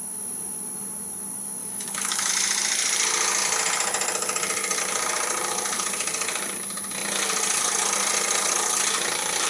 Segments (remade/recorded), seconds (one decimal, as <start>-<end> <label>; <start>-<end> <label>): 0.0-1.6 recorded; 1.6-2.3 remade; 2.3-9.5 recorded